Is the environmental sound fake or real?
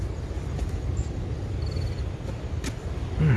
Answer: real